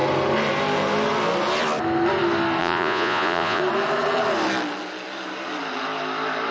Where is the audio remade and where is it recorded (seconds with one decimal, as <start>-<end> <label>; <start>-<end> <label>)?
0.0-2.6 recorded; 2.6-3.6 remade; 3.6-6.5 recorded